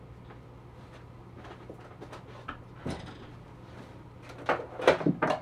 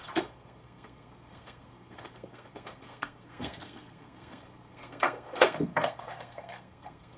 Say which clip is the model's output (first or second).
second